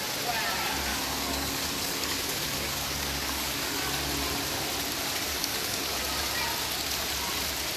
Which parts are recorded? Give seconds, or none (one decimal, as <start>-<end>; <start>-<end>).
0.0-0.9; 3.8-5.3; 6.0-7.8